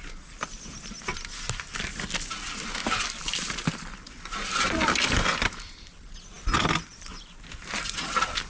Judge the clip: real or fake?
real